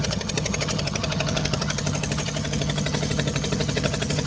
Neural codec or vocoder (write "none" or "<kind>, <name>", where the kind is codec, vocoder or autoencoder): vocoder, HiFi-GAN